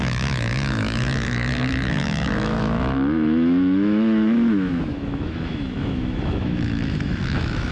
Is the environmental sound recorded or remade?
remade